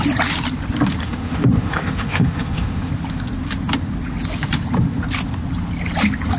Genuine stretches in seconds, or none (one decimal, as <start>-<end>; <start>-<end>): 0.0-1.0; 2.9-6.4